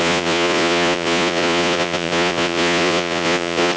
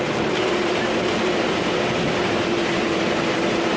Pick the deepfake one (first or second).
first